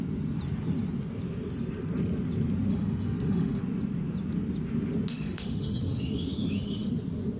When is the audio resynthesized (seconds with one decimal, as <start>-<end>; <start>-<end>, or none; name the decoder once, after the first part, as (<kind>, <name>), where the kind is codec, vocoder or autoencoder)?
2.7-3.6 (autoencoder, DAC-VAE); 5.1-6.9